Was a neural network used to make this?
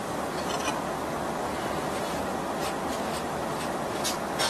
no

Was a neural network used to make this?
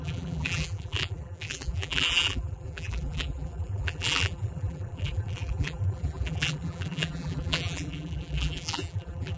yes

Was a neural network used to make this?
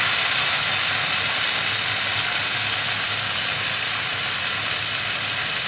no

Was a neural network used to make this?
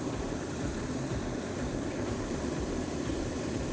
yes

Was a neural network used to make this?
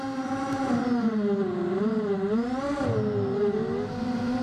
no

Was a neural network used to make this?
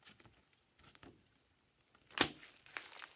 no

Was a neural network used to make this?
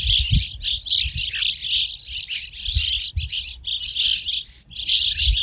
no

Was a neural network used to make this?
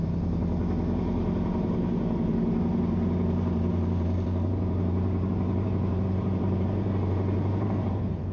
yes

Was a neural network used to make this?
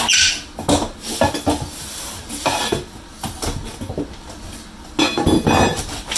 no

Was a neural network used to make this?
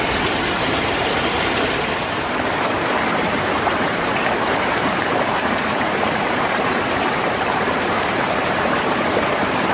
yes